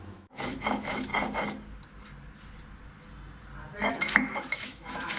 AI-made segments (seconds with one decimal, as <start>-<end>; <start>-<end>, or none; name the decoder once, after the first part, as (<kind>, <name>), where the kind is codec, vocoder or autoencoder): 0.0-1.1 (autoencoder, DAC-VAE); 3.9-5.2